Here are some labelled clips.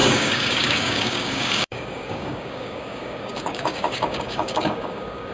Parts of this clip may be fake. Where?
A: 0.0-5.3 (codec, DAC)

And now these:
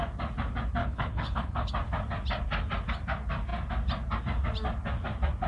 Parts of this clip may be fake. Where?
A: 0.8-1.7 (codec, HILCodec)